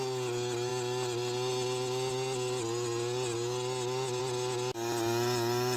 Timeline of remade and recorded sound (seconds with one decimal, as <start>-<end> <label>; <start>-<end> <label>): 0.0-5.8 recorded

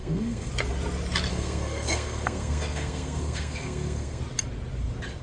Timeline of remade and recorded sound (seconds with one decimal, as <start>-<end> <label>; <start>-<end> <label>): 0.0-0.5 remade; 0.5-1.3 recorded; 1.3-4.2 remade; 4.2-5.2 recorded

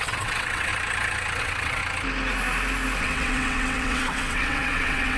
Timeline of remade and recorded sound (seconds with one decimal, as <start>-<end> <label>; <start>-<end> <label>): 0.0-0.7 remade; 0.7-1.4 recorded; 1.4-1.8 remade; 1.8-3.0 recorded; 3.0-5.2 remade

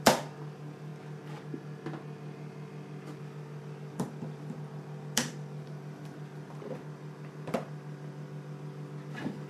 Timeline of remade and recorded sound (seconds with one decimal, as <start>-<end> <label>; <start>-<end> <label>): 0.0-0.9 remade; 0.9-3.2 recorded; 3.2-9.5 remade

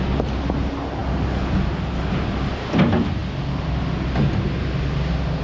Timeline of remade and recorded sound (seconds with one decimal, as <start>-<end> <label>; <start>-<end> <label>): 0.0-5.4 recorded